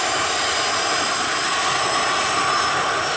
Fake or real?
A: real